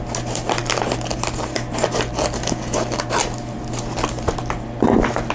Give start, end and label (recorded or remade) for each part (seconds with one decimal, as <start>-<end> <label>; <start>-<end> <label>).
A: 0.0-5.3 recorded